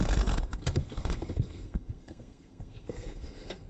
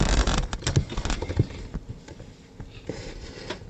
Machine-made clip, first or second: first